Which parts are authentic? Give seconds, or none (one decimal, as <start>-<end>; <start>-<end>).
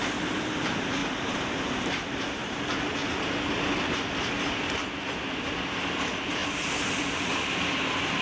0.0-1.0; 2.6-6.4; 7.0-8.2